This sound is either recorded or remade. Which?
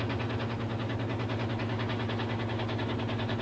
recorded